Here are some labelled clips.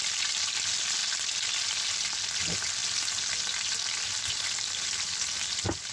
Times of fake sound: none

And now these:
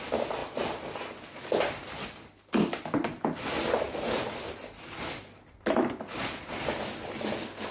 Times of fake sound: none

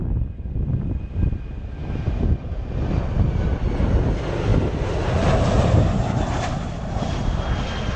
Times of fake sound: none

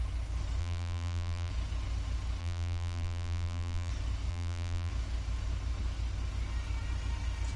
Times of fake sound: 0.6-1.5 (vocoder, BigVGAN v2); 2.4-3.9; 4.3-4.9

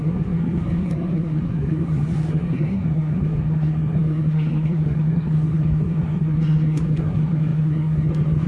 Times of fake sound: 0.0-8.5 (codec, SNAC)

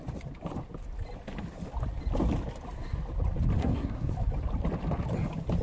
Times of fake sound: 3.6-4.1 (codec, SNAC)

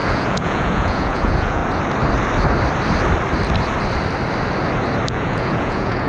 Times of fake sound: 0.0-1.6 (vocoder, Vocos); 5.1-6.1

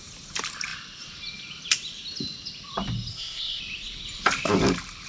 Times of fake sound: 3.1-3.6 (codec, ZipCodec)